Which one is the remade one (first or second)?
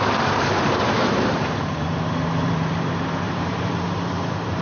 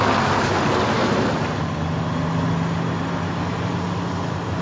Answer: first